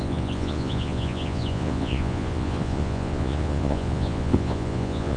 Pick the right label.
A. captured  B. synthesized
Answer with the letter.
B